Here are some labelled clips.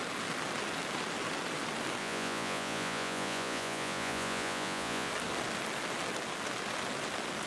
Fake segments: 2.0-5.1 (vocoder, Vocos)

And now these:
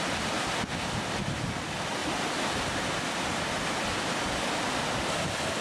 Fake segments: none

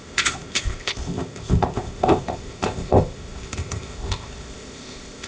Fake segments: 0.0-5.3 (codec, ZipCodec)